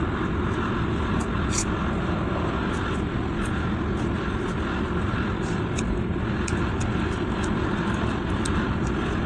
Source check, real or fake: real